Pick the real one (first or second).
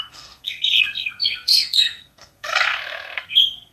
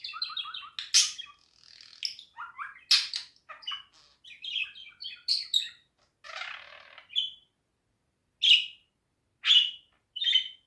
second